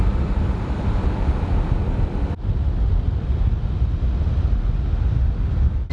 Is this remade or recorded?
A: recorded